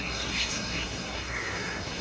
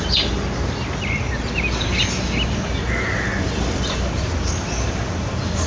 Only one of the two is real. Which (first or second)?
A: second